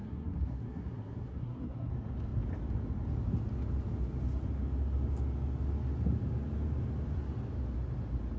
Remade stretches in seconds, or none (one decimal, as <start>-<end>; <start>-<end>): 0.0-1.9